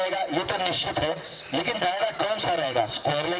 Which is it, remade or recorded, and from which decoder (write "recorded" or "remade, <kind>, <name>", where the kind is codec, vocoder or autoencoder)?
remade, vocoder, WaveNeXt